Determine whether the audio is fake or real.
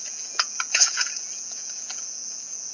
fake